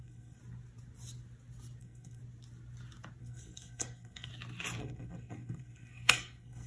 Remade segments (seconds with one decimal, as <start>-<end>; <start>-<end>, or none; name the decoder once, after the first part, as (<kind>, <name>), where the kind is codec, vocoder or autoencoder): 0.0-0.4 (codec, SNAC); 1.8-2.2; 3.2-4.3; 4.8-6.7